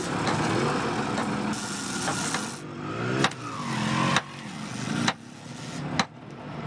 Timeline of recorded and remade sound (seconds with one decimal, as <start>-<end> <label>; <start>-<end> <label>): 0.0-6.7 recorded